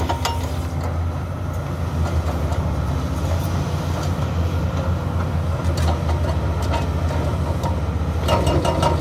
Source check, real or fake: real